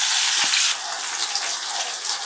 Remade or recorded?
recorded